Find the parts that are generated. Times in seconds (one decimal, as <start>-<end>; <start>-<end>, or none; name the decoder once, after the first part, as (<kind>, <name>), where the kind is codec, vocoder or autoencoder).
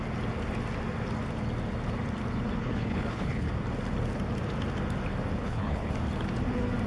2.6-3.5 (codec, HILCodec); 5.4-5.9